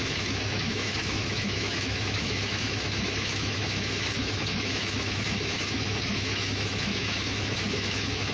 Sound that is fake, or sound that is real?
fake